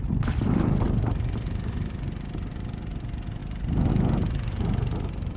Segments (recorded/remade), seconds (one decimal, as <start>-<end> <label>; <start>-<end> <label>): 0.0-5.4 recorded